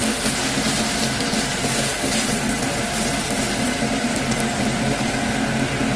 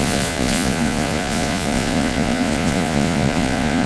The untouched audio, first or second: first